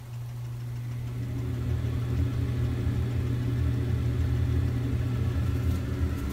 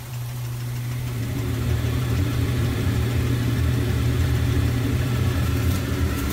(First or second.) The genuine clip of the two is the first